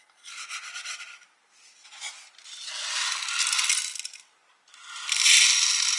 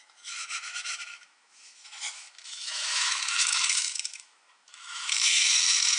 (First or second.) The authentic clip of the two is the first